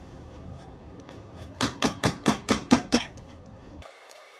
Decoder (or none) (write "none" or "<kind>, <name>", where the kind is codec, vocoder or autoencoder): codec, SNAC